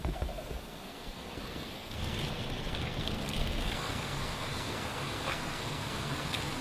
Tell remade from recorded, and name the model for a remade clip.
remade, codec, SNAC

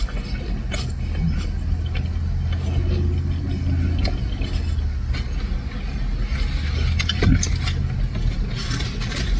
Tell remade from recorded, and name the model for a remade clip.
recorded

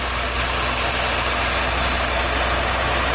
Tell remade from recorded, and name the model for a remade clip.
recorded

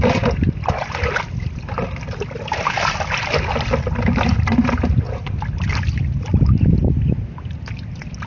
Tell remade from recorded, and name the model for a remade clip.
recorded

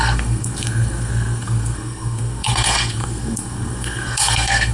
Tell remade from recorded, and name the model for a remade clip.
remade, codec, SNAC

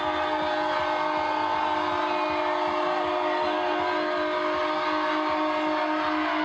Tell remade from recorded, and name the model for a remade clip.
recorded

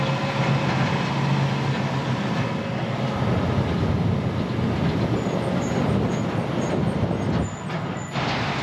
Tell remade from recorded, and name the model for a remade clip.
recorded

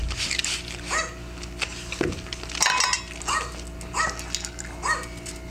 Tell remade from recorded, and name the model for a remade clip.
recorded